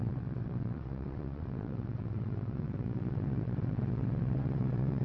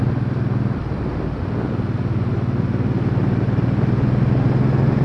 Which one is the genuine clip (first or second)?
second